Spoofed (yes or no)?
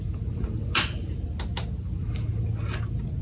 no